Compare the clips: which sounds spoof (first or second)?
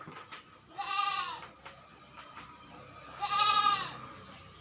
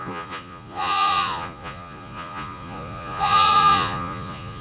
second